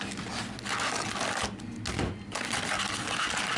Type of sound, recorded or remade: recorded